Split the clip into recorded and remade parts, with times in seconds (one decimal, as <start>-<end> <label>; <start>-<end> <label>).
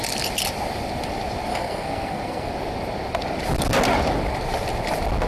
0.0-1.5 recorded; 1.5-2.5 remade; 2.5-5.3 recorded